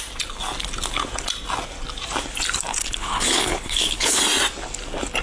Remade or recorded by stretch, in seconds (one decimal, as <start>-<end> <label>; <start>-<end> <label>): 0.0-2.7 recorded; 2.7-4.2 remade; 4.2-5.2 recorded

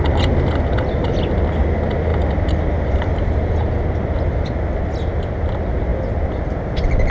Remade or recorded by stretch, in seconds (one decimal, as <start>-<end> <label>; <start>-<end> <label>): 0.0-7.1 recorded

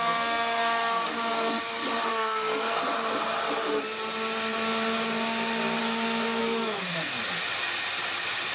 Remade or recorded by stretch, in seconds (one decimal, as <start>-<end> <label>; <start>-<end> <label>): 0.0-2.1 recorded; 2.1-2.8 remade; 2.8-6.4 recorded; 6.4-7.2 remade; 7.2-8.5 recorded

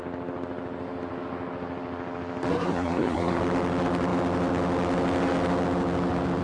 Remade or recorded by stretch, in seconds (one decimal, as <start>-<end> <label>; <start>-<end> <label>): 0.0-2.5 recorded; 2.5-3.4 remade; 3.4-6.4 recorded

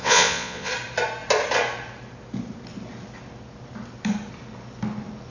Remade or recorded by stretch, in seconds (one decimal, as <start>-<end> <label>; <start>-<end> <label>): 0.0-0.7 remade; 0.7-5.3 recorded

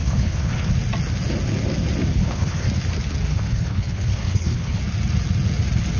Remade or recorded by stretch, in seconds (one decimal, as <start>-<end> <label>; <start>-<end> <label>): 0.0-0.7 remade; 0.7-2.1 recorded; 2.1-2.7 remade; 2.7-3.3 recorded; 3.3-4.8 remade; 4.8-6.0 recorded

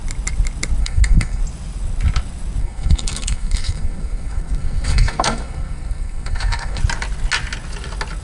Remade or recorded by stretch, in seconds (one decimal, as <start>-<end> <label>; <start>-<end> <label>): 0.0-0.8 recorded; 0.8-1.4 remade; 1.4-2.6 recorded; 2.6-6.8 remade; 6.8-8.2 recorded